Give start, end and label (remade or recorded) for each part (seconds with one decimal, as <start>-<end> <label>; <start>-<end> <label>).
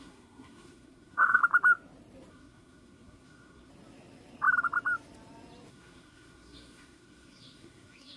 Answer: 0.0-1.4 remade; 1.4-2.3 recorded; 2.3-3.7 remade; 3.7-5.7 recorded; 5.7-8.2 remade